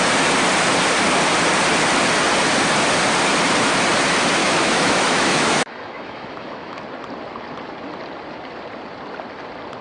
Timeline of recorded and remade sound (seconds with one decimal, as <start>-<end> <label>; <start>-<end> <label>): 0.0-4.4 recorded; 4.4-6.8 remade; 6.8-9.8 recorded